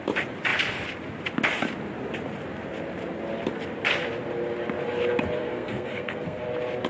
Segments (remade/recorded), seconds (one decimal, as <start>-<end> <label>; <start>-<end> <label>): 0.0-5.4 recorded; 5.4-6.4 remade; 6.4-6.9 recorded